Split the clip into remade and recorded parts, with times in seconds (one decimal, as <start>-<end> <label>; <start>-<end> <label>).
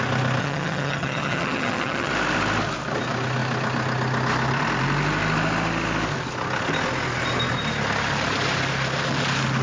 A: 0.0-0.4 recorded; 0.4-2.1 remade; 2.1-9.6 recorded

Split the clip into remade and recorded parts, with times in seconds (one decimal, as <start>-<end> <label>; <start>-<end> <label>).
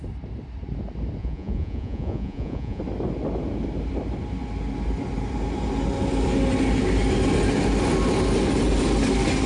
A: 0.0-1.2 recorded; 1.2-2.8 remade; 2.8-9.5 recorded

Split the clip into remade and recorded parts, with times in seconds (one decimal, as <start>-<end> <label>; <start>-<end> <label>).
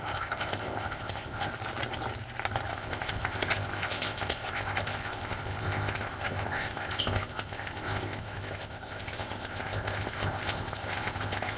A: 0.0-1.5 remade; 1.5-2.7 recorded; 2.7-11.6 remade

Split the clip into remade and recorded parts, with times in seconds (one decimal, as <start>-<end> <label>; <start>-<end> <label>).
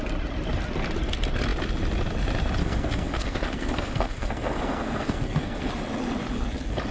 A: 0.0-2.6 recorded; 2.6-5.7 remade; 5.7-6.9 recorded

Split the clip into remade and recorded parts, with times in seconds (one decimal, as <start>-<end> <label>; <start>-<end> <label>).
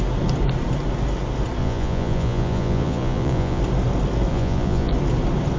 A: 0.0-1.6 recorded; 1.6-3.6 remade; 3.6-4.3 recorded; 4.3-4.9 remade; 4.9-5.6 recorded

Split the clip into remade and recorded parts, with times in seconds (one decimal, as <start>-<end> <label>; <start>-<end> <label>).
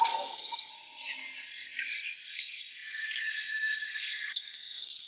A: 0.0-0.7 remade; 0.7-2.3 recorded; 2.3-5.1 remade